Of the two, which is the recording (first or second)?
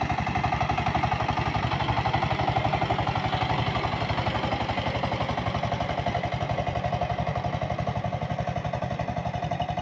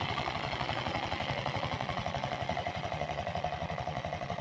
first